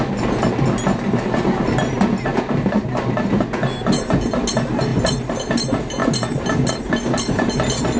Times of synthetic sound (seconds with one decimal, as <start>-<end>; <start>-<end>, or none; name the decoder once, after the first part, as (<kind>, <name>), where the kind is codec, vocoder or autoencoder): 2.3-3.3 (vocoder, BigVGAN v2); 4.9-5.5